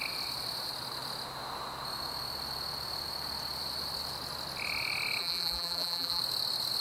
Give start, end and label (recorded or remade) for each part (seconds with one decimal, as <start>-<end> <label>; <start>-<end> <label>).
0.0-5.2 recorded; 5.2-6.2 remade; 6.2-6.8 recorded